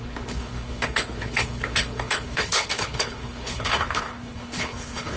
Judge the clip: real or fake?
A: fake